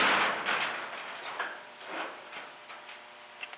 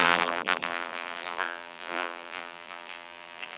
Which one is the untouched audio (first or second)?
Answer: first